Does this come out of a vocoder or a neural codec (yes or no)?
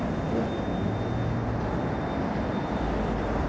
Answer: no